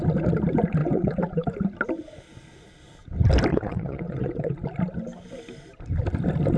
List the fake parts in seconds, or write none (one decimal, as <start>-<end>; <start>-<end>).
0.8-1.5; 3.5-4.5